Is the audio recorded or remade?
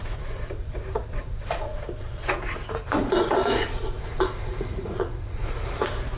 remade